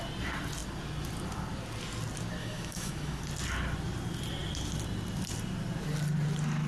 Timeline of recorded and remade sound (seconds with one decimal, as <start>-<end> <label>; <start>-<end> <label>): 0.0-2.4 recorded; 2.4-3.2 remade; 3.2-6.7 recorded